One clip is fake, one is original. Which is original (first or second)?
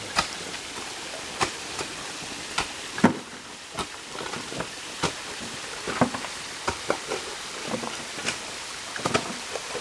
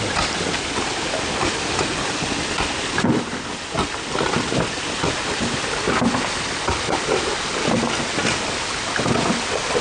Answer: second